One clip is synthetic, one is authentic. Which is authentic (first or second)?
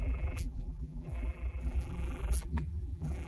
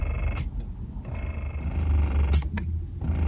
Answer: second